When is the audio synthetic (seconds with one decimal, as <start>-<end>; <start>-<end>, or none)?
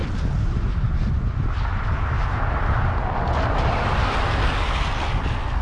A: none